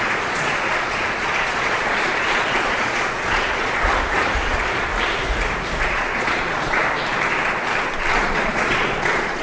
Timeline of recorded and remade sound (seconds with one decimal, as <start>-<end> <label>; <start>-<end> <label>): 0.0-4.9 remade; 4.9-5.8 recorded; 5.8-6.8 remade; 6.8-8.2 recorded; 8.2-9.4 remade